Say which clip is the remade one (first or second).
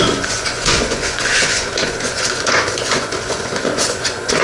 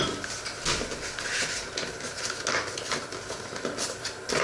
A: first